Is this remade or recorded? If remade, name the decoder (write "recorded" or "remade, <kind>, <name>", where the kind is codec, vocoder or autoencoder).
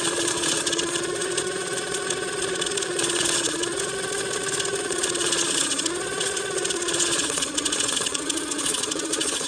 remade, vocoder, Vocos